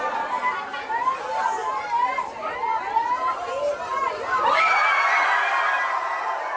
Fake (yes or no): no